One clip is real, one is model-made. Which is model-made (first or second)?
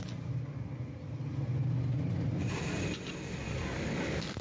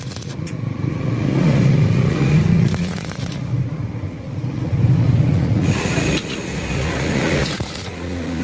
second